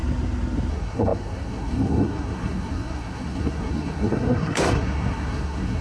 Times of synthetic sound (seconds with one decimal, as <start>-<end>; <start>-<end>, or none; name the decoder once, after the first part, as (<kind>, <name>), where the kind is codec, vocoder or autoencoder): 0.7-5.8 (codec, SNAC)